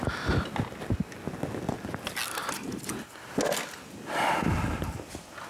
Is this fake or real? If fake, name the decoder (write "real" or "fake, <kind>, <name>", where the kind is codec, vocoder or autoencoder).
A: real